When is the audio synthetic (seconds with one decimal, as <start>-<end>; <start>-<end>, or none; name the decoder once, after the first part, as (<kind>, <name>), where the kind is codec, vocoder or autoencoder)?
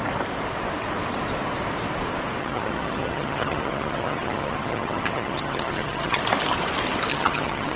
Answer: 2.4-6.2 (vocoder, HiFi-GAN); 7.1-7.8